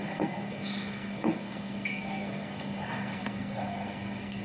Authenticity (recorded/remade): remade